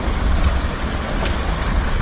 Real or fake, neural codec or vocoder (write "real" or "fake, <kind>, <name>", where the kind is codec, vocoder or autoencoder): real